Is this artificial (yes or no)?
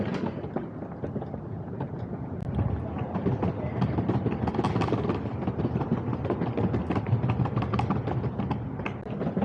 no